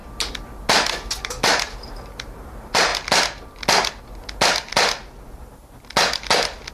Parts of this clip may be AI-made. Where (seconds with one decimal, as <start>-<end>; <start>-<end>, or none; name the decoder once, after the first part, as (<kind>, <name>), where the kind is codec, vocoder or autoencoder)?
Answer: 1.2-2.9 (vocoder, BigVGAN v2)